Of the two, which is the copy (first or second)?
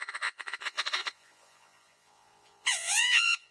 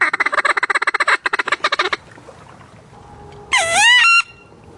first